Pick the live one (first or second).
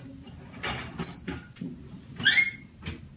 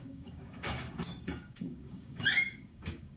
first